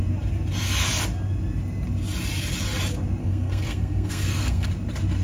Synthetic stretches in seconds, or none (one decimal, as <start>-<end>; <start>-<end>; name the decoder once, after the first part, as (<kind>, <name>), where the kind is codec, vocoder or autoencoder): 3.2-4.7 (codec, SNAC)